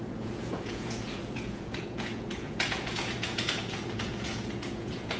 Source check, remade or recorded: remade